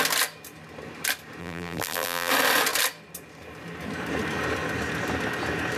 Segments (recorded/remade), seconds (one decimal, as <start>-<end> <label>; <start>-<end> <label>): 0.0-1.4 recorded; 1.4-2.3 remade; 2.3-5.8 recorded